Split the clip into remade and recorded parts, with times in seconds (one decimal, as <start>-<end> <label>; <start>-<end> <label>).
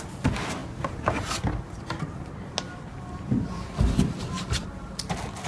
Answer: 0.0-5.5 recorded